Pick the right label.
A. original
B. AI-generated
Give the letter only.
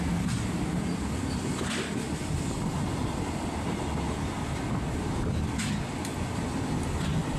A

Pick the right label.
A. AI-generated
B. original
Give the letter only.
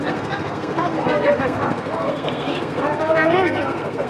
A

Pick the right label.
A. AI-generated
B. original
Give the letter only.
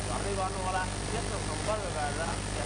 B